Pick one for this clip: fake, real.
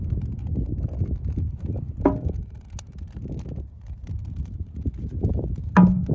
real